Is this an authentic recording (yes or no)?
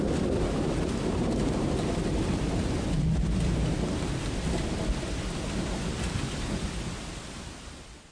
yes